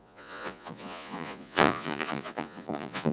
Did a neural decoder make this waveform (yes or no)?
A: yes